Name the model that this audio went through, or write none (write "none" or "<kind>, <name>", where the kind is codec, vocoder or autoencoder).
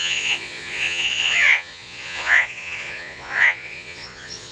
vocoder, Vocos